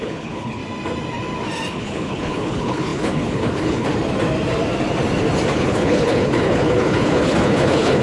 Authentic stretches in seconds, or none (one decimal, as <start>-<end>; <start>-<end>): 0.6-1.7; 3.9-5.5